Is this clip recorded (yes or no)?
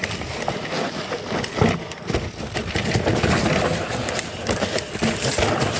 yes